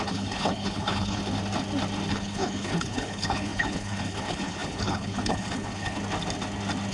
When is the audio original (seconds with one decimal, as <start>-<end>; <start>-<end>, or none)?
1.2-2.1; 6.0-6.9

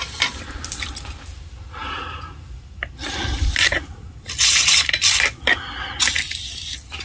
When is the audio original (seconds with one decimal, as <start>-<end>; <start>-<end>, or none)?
0.0-7.0

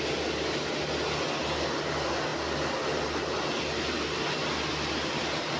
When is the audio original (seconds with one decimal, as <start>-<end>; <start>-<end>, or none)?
0.0-5.6

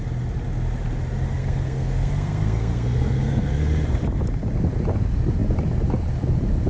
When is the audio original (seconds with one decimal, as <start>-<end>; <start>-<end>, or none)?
0.0-1.4; 3.5-6.7

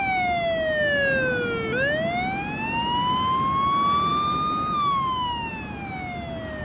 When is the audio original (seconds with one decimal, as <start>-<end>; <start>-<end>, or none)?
0.0-6.6

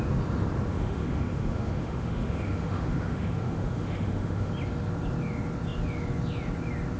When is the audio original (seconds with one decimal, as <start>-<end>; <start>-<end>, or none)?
0.0-0.7; 4.5-7.0

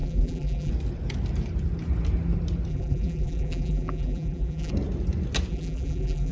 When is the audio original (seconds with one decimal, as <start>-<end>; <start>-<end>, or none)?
0.7-2.7; 4.7-5.5

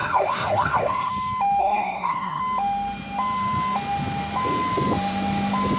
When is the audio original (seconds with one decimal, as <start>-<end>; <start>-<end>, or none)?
1.1-1.6; 2.4-5.8